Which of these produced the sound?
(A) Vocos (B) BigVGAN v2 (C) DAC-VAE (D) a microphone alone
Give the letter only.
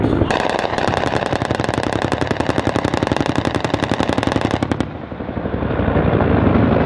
B